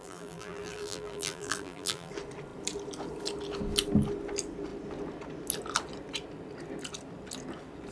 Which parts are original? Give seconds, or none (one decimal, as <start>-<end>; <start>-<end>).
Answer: 2.1-7.9